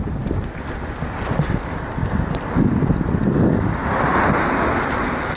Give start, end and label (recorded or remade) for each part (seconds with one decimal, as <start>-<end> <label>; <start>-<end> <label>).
0.0-5.4 recorded